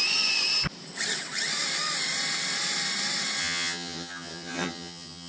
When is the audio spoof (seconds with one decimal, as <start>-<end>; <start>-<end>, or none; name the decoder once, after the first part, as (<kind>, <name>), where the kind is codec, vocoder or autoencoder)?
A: 3.4-5.3 (vocoder, HiFi-GAN)